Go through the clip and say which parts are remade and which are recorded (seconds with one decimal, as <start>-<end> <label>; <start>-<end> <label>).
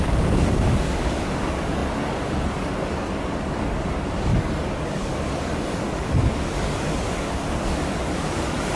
0.0-8.8 remade